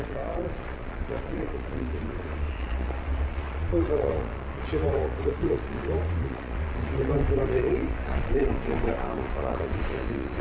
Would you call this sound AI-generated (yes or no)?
yes